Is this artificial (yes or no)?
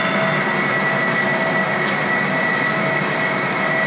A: no